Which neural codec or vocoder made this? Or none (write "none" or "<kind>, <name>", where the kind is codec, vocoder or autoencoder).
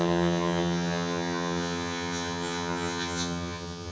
vocoder, HiFi-GAN